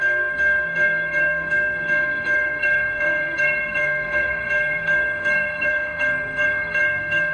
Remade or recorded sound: remade